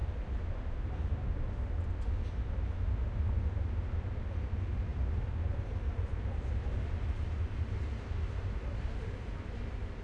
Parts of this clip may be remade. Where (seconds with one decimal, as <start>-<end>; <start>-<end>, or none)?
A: 0.0-0.9; 4.9-10.0